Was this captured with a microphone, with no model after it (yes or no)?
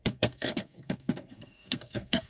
no